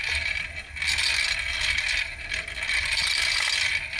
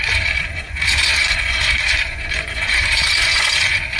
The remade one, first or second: second